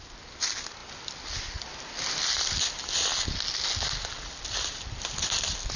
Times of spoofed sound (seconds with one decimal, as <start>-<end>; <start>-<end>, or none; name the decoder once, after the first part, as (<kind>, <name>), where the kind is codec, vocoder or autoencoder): none